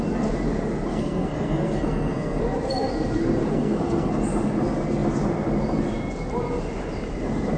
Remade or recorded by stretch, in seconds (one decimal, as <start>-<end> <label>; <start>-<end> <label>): 0.0-0.9 recorded; 0.9-2.4 remade; 2.4-3.5 recorded; 3.5-4.1 remade; 4.1-7.6 recorded